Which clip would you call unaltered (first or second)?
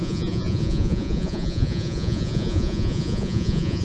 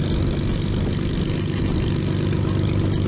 second